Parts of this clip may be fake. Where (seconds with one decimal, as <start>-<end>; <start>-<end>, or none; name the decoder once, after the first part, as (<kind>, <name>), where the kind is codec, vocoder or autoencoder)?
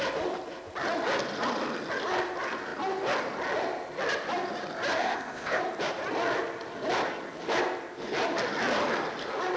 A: 5.0-5.6 (codec, ZipCodec)